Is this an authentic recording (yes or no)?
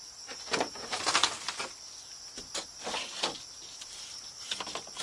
yes